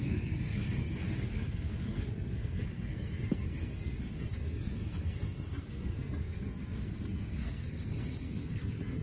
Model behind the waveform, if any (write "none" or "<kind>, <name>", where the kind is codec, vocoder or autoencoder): codec, SNAC